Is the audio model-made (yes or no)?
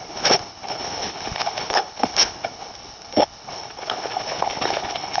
yes